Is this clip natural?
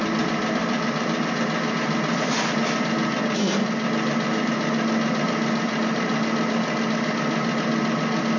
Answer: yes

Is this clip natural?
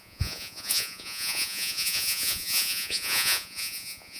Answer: no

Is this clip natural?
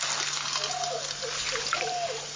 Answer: yes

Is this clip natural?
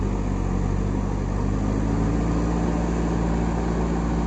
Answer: yes